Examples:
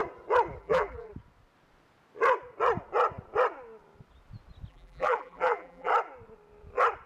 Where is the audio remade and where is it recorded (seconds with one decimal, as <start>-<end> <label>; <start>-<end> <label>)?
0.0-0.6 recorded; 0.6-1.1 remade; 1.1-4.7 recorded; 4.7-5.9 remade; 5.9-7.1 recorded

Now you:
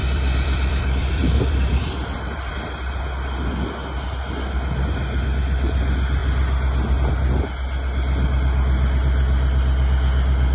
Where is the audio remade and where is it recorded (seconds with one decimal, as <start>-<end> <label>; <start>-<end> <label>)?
0.0-2.5 remade; 2.5-10.5 recorded

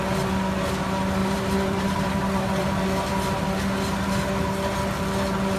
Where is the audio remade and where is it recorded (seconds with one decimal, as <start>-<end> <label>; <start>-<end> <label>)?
0.0-1.2 recorded; 1.2-3.1 remade; 3.1-5.6 recorded

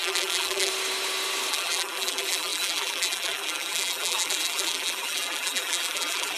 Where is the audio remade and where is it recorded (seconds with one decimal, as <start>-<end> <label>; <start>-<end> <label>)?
0.0-0.7 remade; 0.7-1.5 recorded; 1.5-6.4 remade